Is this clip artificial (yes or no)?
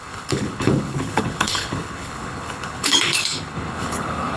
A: yes